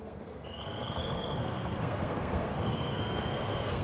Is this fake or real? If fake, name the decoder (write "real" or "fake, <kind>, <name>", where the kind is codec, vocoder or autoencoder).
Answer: fake, codec, SNAC